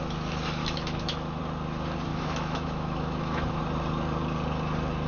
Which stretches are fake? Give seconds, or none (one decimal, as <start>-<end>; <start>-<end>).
0.6-1.4; 2.1-3.6